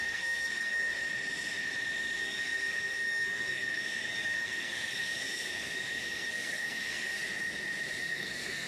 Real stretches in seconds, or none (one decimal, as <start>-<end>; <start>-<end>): 0.9-2.2; 7.2-8.0